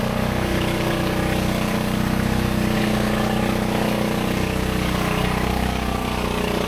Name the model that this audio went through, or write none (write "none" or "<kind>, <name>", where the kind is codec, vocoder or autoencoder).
codec, DAC